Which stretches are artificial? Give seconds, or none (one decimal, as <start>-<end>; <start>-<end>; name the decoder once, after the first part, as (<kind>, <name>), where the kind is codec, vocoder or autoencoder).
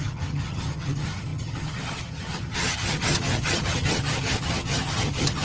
0.0-5.4 (vocoder, HiFi-GAN)